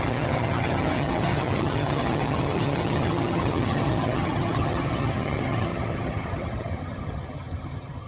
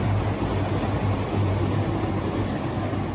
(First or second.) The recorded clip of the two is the second